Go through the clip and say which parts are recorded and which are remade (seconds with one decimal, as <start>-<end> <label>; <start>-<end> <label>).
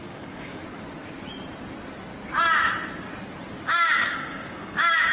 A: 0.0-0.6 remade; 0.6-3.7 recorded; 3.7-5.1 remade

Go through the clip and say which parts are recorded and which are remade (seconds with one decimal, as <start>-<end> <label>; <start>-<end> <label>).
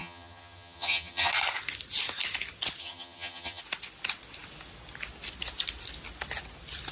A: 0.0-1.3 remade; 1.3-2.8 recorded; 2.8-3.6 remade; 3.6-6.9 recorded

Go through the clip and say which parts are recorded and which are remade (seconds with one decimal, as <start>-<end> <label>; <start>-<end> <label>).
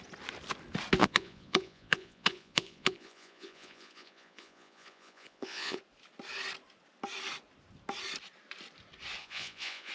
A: 0.0-1.0 recorded; 1.0-5.8 remade; 5.8-9.2 recorded; 9.2-9.9 remade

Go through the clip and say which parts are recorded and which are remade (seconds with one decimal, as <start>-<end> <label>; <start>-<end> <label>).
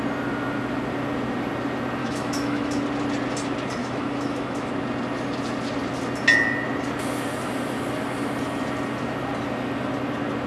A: 0.0-2.0 recorded; 2.0-2.8 remade; 2.8-3.8 recorded; 3.8-4.7 remade; 4.7-10.5 recorded